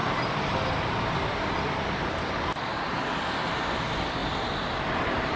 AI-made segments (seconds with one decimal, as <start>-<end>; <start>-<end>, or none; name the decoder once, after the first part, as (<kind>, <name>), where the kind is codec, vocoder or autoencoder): none